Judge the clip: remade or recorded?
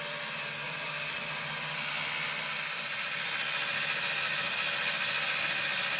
recorded